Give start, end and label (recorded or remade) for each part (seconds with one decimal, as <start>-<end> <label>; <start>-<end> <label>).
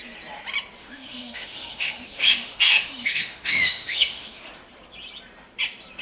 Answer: 0.0-0.8 recorded; 0.8-4.4 remade; 4.4-6.0 recorded